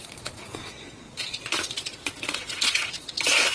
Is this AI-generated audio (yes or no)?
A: yes